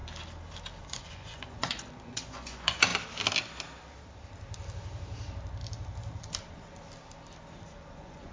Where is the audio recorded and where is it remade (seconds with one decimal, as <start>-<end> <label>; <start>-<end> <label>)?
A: 0.0-0.8 recorded; 0.8-2.9 remade; 2.9-7.9 recorded; 7.9-8.3 remade

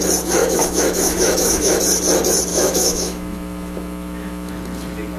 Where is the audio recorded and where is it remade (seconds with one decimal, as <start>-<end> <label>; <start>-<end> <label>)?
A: 0.0-0.4 recorded; 0.4-1.8 remade; 1.8-2.5 recorded; 2.5-4.5 remade; 4.5-5.2 recorded

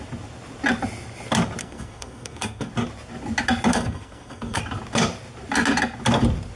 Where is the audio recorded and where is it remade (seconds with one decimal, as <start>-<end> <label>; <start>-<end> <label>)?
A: 0.0-1.6 recorded; 1.6-2.7 remade; 2.7-3.7 recorded; 3.7-4.6 remade; 4.6-6.6 recorded

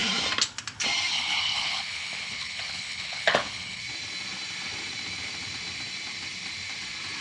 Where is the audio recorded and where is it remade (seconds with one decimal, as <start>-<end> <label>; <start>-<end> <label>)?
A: 0.0-1.1 recorded; 1.1-3.8 remade; 3.8-7.2 recorded

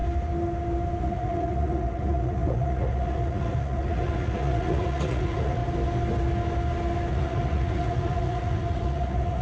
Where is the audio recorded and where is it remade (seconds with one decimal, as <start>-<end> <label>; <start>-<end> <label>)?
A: 0.0-1.0 recorded; 1.0-5.6 remade; 5.6-7.1 recorded; 7.1-9.4 remade

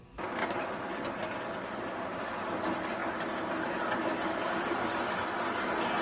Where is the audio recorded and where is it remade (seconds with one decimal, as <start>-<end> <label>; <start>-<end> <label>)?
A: 0.0-6.0 recorded